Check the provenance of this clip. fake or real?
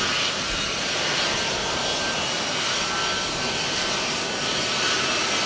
real